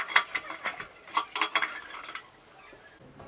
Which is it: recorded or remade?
recorded